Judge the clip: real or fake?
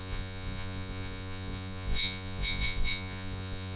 fake